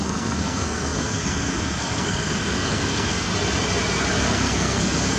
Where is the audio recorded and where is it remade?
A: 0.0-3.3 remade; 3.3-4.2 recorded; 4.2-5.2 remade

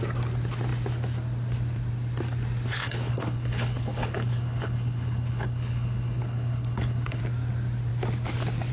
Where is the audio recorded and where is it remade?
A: 0.0-2.8 recorded; 2.8-7.2 remade; 7.2-8.7 recorded

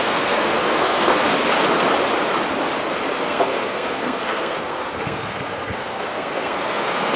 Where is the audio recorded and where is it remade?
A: 0.0-1.3 remade; 1.3-3.2 recorded; 3.2-7.2 remade